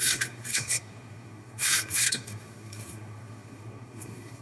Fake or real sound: fake